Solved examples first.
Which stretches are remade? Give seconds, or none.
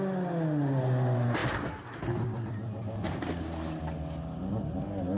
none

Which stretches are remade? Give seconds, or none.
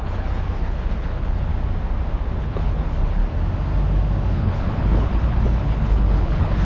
0.0-1.5; 2.4-3.2; 4.3-6.6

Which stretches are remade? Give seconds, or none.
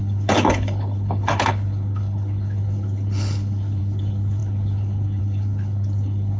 0.0-6.4